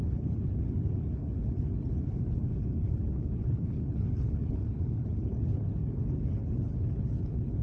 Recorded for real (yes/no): no